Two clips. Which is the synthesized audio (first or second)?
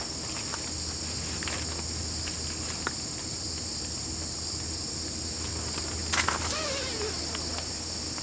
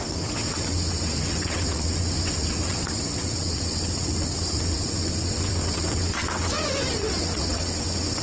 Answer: second